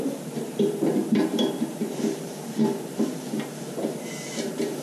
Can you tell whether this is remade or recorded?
remade